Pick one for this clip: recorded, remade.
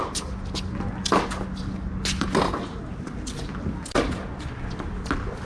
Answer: recorded